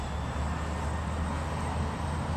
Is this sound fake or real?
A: real